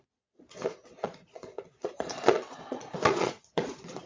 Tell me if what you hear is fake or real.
fake